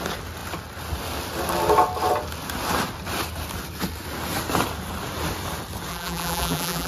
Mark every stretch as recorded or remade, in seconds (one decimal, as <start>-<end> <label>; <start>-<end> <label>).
0.0-5.9 recorded; 5.9-6.9 remade